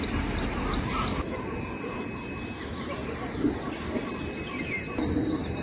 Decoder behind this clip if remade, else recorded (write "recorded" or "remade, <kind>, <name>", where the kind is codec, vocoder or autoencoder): recorded